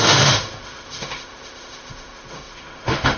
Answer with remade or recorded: remade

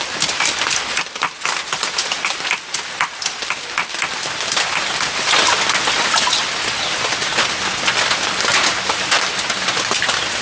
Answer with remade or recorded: recorded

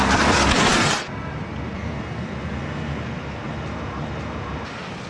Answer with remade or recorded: recorded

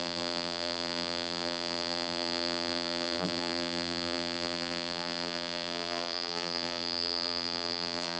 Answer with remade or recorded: remade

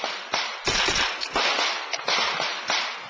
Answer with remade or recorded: recorded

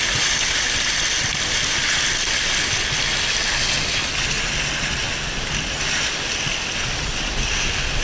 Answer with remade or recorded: recorded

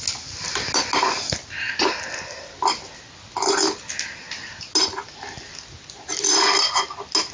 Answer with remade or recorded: recorded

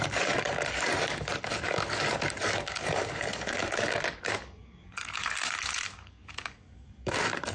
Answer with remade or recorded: remade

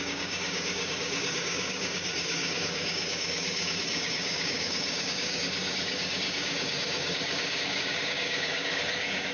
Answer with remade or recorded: remade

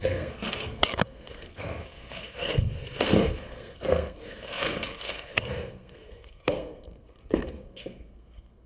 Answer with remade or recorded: remade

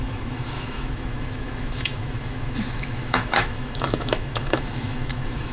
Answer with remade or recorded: remade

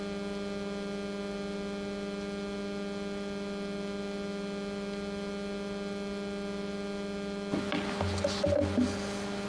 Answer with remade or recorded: recorded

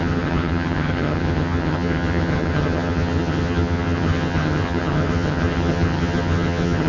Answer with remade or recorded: remade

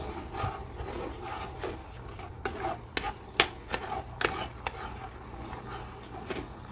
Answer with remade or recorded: recorded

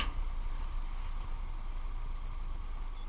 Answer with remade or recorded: recorded